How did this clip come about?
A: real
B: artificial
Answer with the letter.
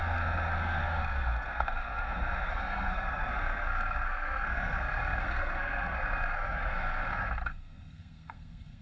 B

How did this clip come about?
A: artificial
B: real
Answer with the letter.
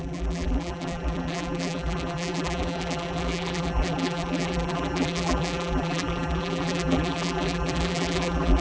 A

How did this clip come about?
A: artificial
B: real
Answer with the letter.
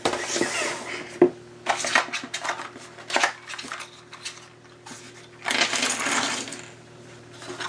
B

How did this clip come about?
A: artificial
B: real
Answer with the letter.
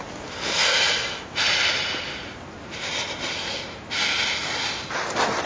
B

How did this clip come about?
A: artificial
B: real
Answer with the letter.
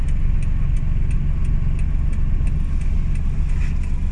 B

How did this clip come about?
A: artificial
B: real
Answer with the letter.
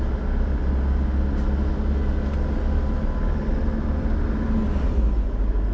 B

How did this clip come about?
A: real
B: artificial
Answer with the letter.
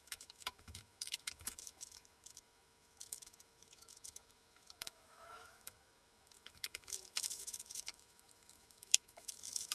B